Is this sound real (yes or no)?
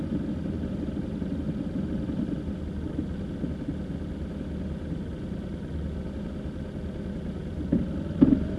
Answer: yes